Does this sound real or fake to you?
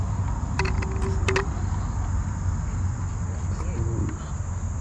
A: real